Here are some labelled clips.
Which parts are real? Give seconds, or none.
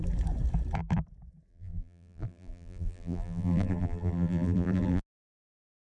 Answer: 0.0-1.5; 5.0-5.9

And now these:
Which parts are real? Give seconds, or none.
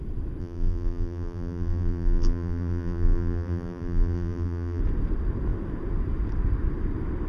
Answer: 0.0-0.4; 4.8-7.3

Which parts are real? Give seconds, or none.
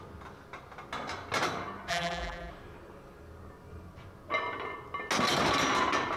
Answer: 0.0-1.9; 2.5-6.2